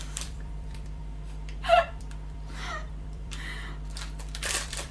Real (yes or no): no